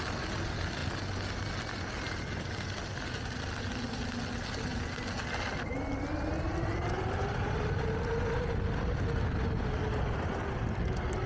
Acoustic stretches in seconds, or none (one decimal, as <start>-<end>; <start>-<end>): 0.0-11.3